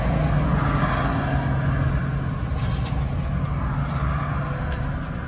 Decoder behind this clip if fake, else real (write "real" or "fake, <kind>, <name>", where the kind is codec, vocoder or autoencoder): real